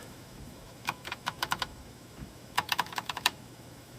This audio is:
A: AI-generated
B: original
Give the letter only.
A